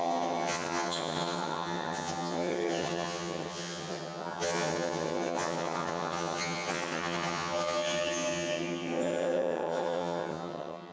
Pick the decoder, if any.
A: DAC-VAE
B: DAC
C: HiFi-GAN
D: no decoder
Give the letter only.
C